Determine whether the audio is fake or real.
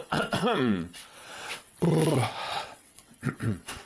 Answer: fake